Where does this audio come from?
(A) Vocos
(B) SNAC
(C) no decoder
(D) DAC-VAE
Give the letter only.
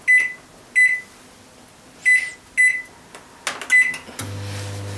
C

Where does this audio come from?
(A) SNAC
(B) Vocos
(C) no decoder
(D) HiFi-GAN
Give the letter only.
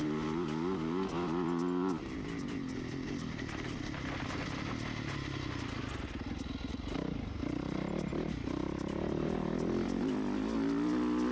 C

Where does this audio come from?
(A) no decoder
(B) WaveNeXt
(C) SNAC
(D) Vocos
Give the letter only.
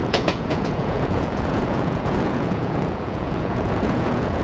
D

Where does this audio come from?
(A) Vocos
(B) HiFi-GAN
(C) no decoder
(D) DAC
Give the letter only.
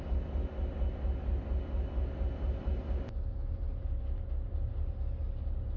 C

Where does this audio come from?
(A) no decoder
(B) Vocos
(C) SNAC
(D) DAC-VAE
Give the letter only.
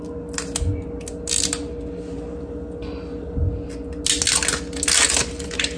A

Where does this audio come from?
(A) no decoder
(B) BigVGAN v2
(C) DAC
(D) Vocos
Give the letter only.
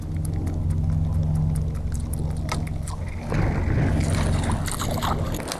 A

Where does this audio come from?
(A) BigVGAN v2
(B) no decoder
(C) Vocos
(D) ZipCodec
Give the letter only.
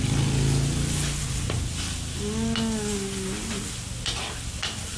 B